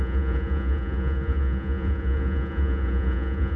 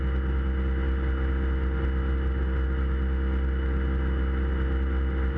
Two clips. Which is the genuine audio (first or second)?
second